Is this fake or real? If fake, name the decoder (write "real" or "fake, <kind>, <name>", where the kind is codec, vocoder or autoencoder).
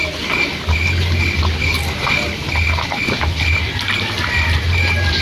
real